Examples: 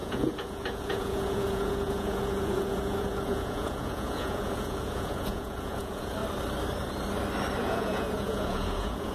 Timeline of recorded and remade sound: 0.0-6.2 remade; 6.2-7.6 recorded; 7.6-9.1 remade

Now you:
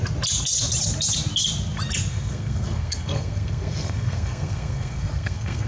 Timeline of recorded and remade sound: 0.0-2.1 recorded; 2.1-5.7 remade

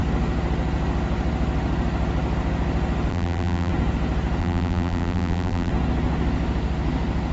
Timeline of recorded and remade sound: 0.0-3.1 recorded; 3.1-3.7 remade; 3.7-4.4 recorded; 4.4-5.7 remade; 5.7-7.3 recorded

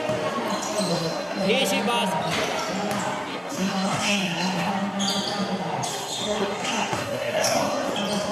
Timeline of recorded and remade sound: 0.0-0.9 recorded; 0.9-1.5 remade; 1.5-3.3 recorded; 3.3-4.7 remade; 4.7-5.9 recorded; 5.9-7.9 remade; 7.9-8.3 recorded

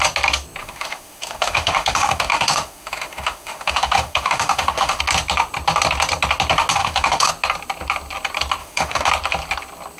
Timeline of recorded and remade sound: 0.0-0.6 recorded; 0.6-5.0 remade; 5.0-6.8 recorded; 6.8-7.3 remade; 7.3-8.6 recorded; 8.6-9.1 remade; 9.1-10.0 recorded

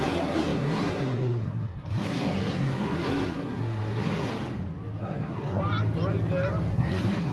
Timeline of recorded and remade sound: 0.0-4.3 remade; 4.3-5.0 recorded; 5.0-5.6 remade; 5.6-6.7 recorded; 6.7-7.3 remade